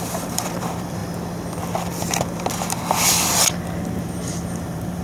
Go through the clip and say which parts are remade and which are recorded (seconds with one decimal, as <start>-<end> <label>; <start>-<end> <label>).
0.0-1.0 remade; 1.0-4.0 recorded; 4.0-5.0 remade

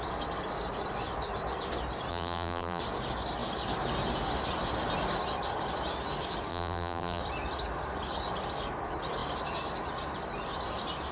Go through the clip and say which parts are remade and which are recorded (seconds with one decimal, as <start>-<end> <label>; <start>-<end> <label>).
0.0-2.1 recorded; 2.1-2.8 remade; 2.8-6.5 recorded; 6.5-7.2 remade; 7.2-11.1 recorded

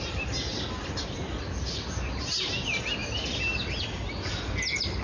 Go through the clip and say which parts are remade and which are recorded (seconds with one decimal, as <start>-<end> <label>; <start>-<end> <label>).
0.0-5.0 recorded

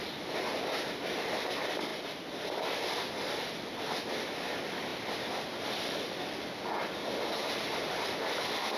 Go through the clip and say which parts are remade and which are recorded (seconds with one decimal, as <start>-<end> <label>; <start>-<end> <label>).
0.0-4.9 recorded; 4.9-6.8 remade; 6.8-7.4 recorded; 7.4-8.4 remade; 8.4-8.8 recorded

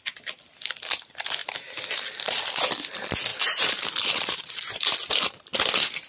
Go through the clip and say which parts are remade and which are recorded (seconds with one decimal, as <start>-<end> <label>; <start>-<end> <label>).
0.0-1.4 recorded; 1.4-2.5 remade; 2.5-3.3 recorded; 3.3-5.5 remade; 5.5-6.1 recorded

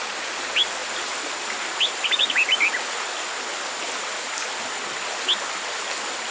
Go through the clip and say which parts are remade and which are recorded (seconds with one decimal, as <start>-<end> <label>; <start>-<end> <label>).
0.0-6.3 recorded

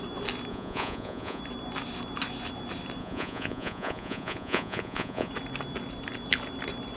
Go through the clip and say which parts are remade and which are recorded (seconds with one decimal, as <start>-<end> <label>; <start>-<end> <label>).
0.0-0.5 recorded; 0.5-1.4 remade; 1.4-3.0 recorded; 3.0-5.3 remade; 5.3-7.0 recorded